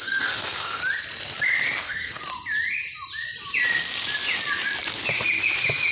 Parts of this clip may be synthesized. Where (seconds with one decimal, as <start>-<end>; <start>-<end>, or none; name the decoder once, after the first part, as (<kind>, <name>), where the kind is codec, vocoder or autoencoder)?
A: 0.0-0.8 (codec, SNAC); 1.8-2.2